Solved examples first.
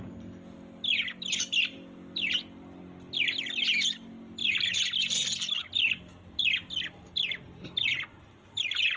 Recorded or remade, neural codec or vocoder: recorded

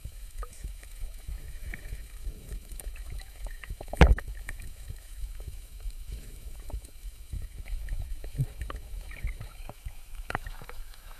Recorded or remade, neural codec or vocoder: remade, autoencoder, DAC-VAE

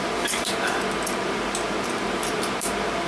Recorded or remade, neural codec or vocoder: remade, vocoder, BigVGAN v2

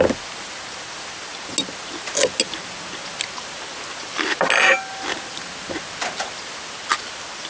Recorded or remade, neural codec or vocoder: recorded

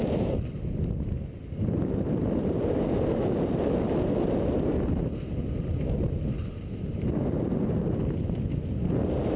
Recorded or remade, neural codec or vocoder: recorded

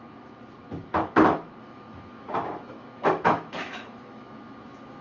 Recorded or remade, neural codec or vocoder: remade, autoencoder, DAC-VAE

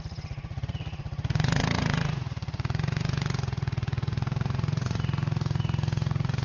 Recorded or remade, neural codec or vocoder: remade, vocoder, Vocos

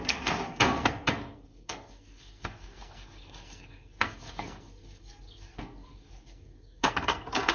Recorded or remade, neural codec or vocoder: remade, codec, SNAC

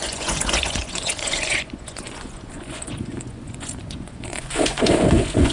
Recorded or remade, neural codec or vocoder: remade, vocoder, Vocos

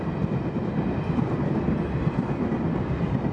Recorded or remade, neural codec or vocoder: recorded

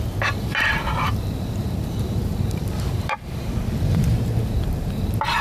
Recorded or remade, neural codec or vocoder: remade, vocoder, BigVGAN v2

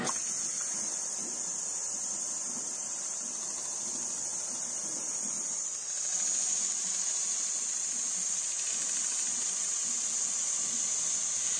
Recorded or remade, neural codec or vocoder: recorded